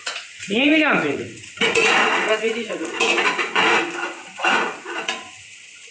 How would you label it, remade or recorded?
remade